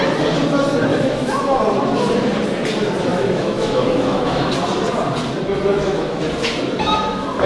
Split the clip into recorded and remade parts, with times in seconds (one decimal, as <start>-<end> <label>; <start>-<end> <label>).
0.0-0.9 recorded; 0.9-1.6 remade; 1.6-3.1 recorded; 3.1-4.5 remade; 4.5-5.7 recorded; 5.7-6.2 remade; 6.2-7.5 recorded